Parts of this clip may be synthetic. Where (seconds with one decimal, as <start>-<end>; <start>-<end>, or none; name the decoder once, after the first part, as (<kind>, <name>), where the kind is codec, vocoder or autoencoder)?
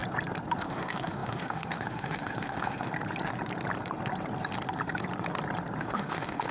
0.6-2.9 (autoencoder, DAC-VAE); 5.8-6.5